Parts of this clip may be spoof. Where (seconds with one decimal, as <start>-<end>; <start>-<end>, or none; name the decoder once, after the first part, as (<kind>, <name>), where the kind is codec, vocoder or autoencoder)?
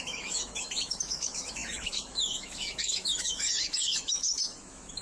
0.0-5.0 (autoencoder, DAC-VAE)